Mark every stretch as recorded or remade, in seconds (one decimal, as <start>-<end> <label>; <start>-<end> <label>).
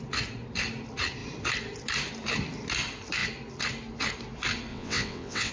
0.0-4.7 recorded; 4.7-5.5 remade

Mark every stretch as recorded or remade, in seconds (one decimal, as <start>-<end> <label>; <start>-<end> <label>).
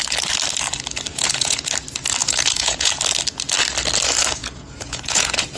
0.0-1.1 recorded; 1.1-1.7 remade; 1.7-2.2 recorded; 2.2-2.9 remade; 2.9-4.4 recorded; 4.4-5.6 remade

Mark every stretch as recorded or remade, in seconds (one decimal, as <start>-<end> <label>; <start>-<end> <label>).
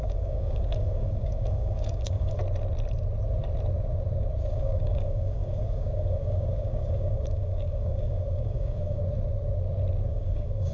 0.0-2.4 remade; 2.4-4.5 recorded; 4.5-9.0 remade; 9.0-10.1 recorded; 10.1-10.7 remade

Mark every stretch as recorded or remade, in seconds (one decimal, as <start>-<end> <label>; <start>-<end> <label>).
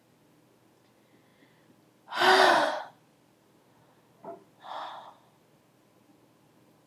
0.0-6.9 recorded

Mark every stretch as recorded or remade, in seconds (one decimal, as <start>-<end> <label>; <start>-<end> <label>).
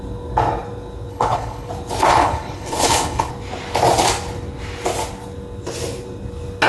0.0-1.1 recorded; 1.1-1.7 remade; 1.7-2.1 recorded; 2.1-3.3 remade; 3.3-6.7 recorded